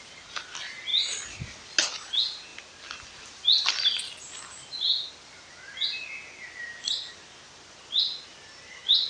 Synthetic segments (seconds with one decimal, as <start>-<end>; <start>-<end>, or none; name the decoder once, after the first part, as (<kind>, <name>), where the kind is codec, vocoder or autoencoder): none